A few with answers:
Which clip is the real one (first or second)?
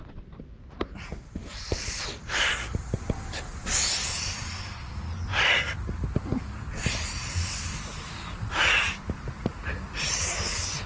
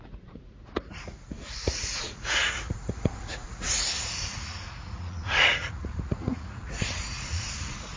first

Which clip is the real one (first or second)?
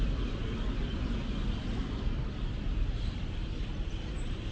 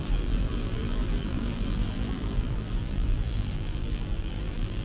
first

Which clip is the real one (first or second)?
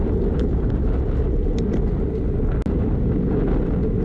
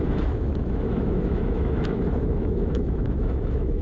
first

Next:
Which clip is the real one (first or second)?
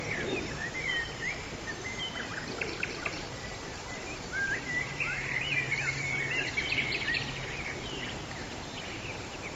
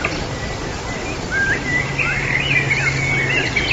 second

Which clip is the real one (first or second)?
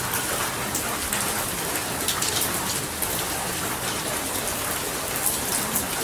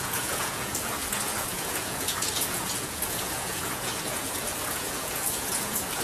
first